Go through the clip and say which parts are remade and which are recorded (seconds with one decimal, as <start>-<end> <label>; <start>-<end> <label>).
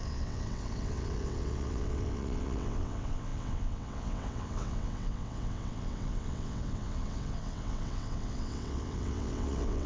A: 0.0-9.9 remade